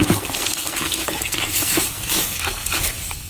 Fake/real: fake